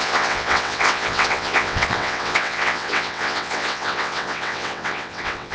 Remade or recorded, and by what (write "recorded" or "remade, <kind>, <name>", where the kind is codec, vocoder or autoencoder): remade, vocoder, WaveNeXt